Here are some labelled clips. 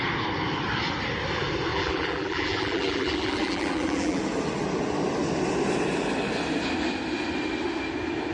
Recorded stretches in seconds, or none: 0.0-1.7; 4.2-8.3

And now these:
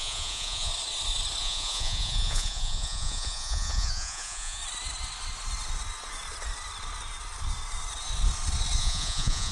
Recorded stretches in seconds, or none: 0.7-1.4; 4.6-8.8